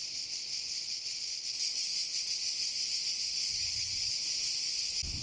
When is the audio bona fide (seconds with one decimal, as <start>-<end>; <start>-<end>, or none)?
0.0-3.5; 4.1-5.2